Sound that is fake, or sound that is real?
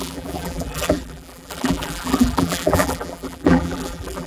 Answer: fake